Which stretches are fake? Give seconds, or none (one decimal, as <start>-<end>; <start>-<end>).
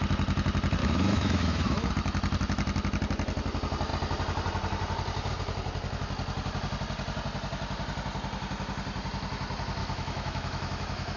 0.8-1.9; 9.8-11.2